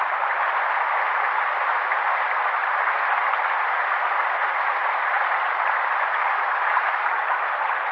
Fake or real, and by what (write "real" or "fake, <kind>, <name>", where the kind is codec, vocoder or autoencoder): real